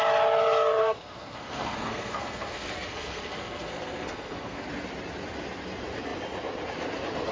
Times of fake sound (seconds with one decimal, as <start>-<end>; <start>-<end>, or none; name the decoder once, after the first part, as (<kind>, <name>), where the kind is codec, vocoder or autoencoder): 0.8-4.6 (codec, SNAC)